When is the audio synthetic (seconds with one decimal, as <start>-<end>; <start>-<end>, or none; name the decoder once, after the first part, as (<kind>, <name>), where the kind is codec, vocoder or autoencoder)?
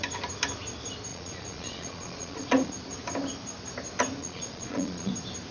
1.1-2.7 (vocoder, Vocos); 4.2-5.1